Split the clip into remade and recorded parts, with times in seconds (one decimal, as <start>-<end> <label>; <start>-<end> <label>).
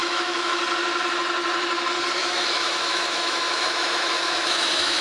0.0-0.6 remade; 0.6-2.2 recorded; 2.2-5.0 remade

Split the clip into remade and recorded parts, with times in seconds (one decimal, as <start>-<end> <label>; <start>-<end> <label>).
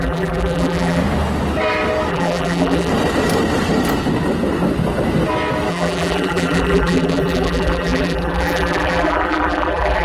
0.0-1.0 remade; 1.0-2.1 recorded; 2.1-2.9 remade; 2.9-5.7 recorded; 5.7-10.0 remade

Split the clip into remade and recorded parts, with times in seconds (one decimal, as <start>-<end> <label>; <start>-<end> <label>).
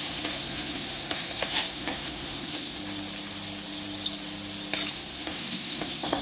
0.0-2.8 remade; 2.8-4.9 recorded; 4.9-6.2 remade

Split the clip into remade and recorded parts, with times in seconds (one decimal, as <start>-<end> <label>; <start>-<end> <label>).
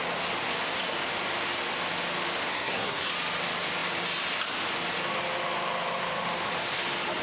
0.0-2.5 recorded; 2.5-3.1 remade; 3.1-7.2 recorded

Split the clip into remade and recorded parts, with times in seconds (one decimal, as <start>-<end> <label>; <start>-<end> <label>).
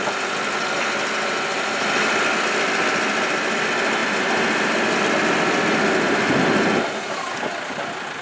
0.0-8.2 recorded